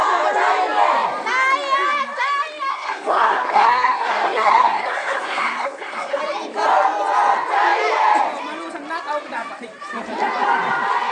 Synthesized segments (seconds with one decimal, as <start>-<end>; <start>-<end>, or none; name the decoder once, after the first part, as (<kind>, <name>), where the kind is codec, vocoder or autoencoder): 2.7-6.2 (codec, SNAC)